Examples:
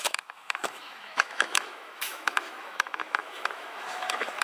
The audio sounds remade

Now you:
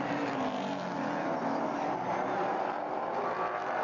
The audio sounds recorded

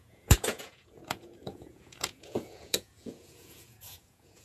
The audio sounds remade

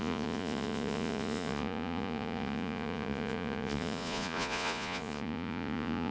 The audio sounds remade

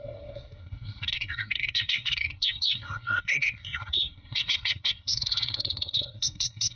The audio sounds remade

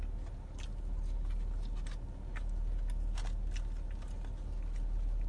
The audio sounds recorded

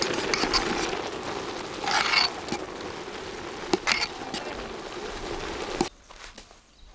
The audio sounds recorded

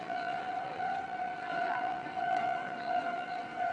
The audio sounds remade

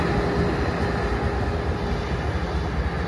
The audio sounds recorded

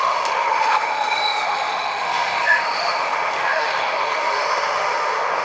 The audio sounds remade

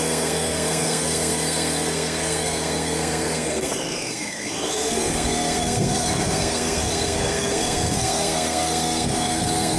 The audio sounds remade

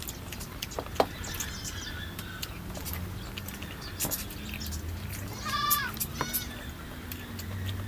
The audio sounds recorded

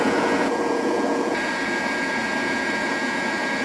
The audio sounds remade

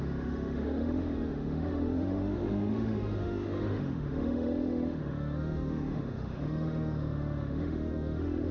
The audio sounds remade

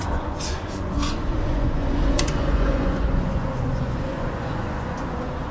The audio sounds remade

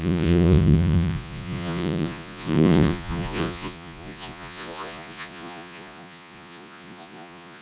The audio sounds remade